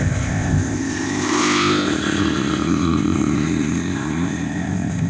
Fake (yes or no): yes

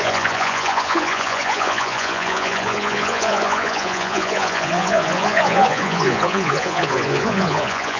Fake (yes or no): yes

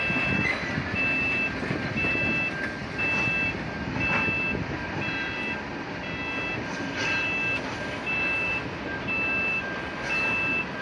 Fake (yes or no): no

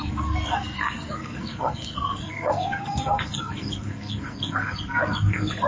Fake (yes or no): yes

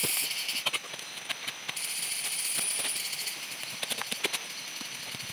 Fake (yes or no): yes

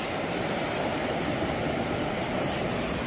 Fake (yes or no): no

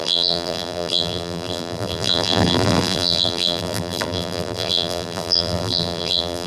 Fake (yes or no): yes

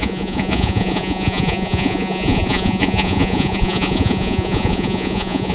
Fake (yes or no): yes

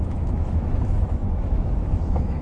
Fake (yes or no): yes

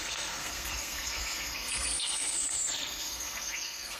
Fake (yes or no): yes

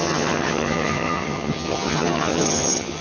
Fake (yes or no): yes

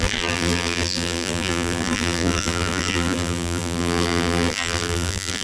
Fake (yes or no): yes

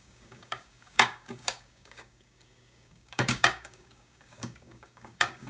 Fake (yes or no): yes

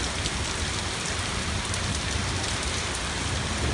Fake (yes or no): no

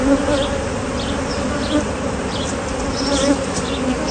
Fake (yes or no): no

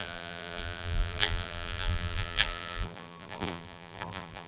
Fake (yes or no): yes